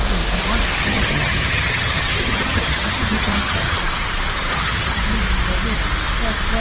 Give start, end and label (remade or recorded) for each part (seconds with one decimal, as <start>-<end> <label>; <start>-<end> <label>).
0.0-0.8 recorded; 0.8-3.8 remade; 3.8-4.5 recorded; 4.5-5.0 remade; 5.0-6.6 recorded